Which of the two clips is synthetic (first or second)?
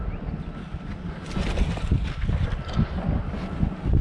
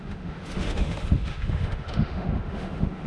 second